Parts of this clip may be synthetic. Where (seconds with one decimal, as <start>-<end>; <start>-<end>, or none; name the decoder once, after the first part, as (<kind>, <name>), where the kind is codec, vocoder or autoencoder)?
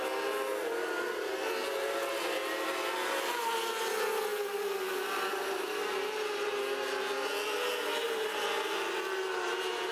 none